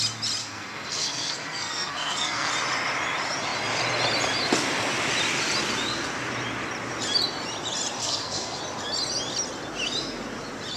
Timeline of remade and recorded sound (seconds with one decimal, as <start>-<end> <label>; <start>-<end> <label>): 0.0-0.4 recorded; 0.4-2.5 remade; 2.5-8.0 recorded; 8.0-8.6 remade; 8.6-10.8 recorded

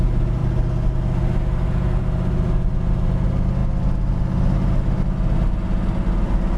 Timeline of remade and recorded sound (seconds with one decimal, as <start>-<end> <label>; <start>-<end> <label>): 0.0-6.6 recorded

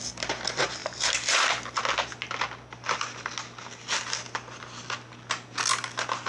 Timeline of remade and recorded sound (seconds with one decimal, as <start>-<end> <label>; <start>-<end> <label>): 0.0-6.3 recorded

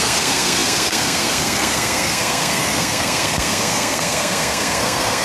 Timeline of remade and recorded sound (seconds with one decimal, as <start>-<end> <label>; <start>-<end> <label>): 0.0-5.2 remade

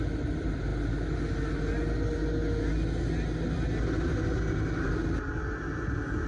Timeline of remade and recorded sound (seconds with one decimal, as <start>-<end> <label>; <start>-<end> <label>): 0.0-6.3 recorded